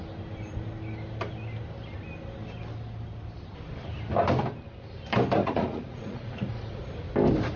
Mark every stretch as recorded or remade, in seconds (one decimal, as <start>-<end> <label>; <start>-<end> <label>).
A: 0.0-5.4 recorded; 5.4-6.9 remade; 6.9-7.6 recorded